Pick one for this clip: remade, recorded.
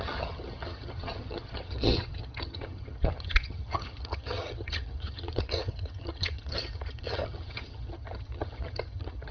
remade